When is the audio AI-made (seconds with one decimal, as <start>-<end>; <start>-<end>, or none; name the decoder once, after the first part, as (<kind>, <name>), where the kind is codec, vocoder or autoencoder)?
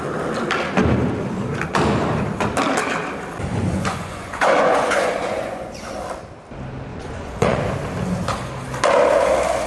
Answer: 3.5-5.7 (vocoder, Vocos); 6.9-7.7